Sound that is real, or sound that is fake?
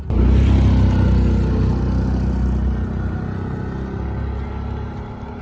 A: real